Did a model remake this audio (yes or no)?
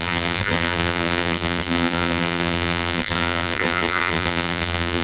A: yes